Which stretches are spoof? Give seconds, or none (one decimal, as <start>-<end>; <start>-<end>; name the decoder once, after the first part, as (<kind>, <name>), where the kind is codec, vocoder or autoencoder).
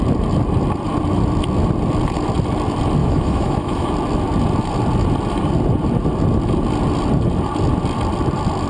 3.0-3.9 (autoencoder, DAC-VAE)